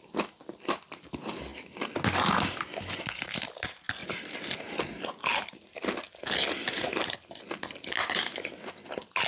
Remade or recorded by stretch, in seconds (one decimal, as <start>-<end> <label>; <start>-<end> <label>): 0.0-9.3 recorded